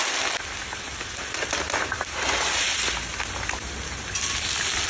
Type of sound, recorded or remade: recorded